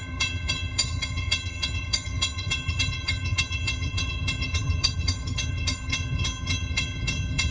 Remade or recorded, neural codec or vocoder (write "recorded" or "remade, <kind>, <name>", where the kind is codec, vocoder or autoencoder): remade, vocoder, HiFi-GAN